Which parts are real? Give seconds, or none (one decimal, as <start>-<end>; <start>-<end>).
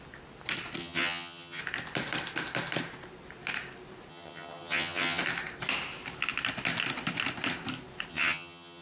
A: 0.0-0.8; 1.6-4.1; 5.2-8.1